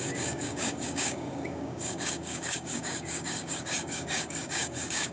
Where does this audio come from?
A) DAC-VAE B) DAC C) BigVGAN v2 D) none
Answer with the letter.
B